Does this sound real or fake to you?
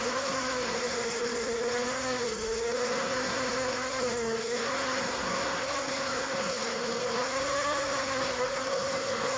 fake